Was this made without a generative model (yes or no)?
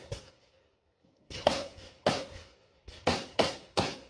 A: no